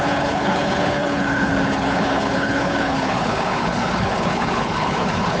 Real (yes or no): no